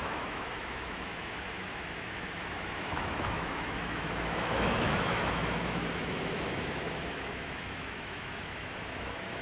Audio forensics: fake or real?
fake